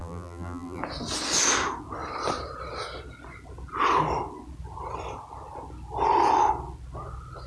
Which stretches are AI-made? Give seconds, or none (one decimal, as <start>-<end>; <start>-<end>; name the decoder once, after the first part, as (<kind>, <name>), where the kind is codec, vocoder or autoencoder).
0.0-0.8 (vocoder, BigVGAN v2)